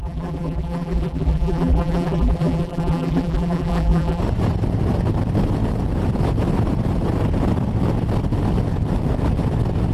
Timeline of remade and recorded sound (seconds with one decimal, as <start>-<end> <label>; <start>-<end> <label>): 0.0-4.2 remade; 4.2-9.9 recorded